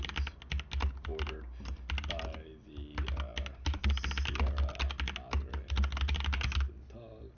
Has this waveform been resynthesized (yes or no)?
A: no